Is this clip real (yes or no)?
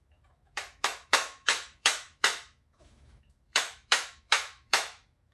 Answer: no